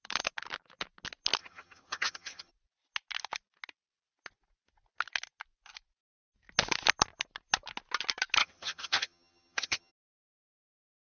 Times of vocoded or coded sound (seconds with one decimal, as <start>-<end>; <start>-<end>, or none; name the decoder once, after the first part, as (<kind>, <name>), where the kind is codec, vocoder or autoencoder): 1.4-2.5 (vocoder, HiFi-GAN); 8.4-9.9